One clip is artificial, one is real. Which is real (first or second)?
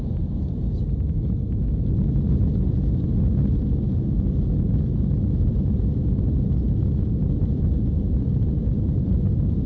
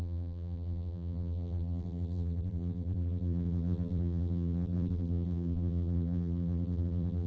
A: first